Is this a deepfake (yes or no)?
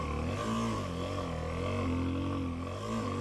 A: no